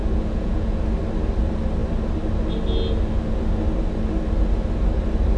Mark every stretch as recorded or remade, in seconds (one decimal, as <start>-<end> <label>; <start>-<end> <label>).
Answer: 0.0-0.8 remade; 0.8-5.4 recorded